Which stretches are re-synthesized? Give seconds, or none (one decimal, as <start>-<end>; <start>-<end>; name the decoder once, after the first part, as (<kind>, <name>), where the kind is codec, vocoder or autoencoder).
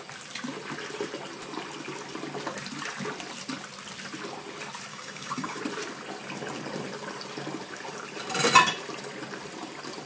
4.9-5.6 (codec, DAC)